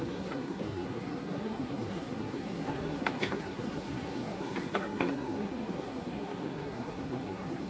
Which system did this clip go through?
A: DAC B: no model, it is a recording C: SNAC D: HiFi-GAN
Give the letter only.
C